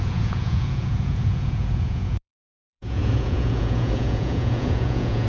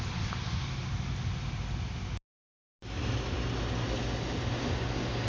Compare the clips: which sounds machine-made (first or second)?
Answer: first